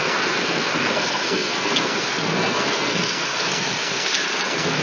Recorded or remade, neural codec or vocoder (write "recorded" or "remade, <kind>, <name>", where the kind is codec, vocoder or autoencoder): remade, codec, SNAC